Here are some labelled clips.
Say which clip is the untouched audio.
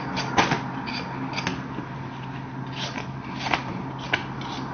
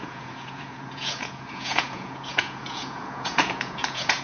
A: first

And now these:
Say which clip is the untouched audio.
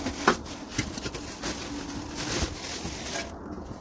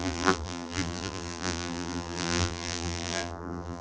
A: first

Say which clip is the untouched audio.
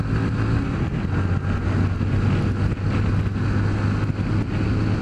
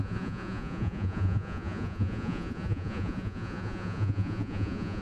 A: first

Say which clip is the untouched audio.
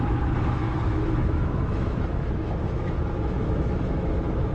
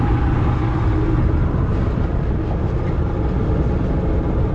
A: second